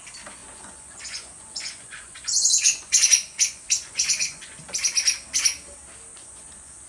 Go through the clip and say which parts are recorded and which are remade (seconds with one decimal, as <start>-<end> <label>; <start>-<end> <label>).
0.0-0.4 recorded; 0.4-4.5 remade; 4.5-6.1 recorded; 6.1-6.9 remade

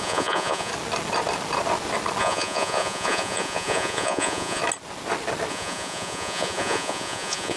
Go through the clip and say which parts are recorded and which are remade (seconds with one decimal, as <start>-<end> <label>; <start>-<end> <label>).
0.0-0.7 remade; 0.7-2.2 recorded; 2.2-4.6 remade; 4.6-5.5 recorded; 5.5-7.6 remade

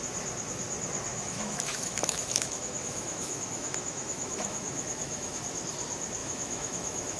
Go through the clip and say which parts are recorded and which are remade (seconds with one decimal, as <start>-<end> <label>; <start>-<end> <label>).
0.0-1.1 recorded; 1.1-5.4 remade; 5.4-6.2 recorded; 6.2-7.2 remade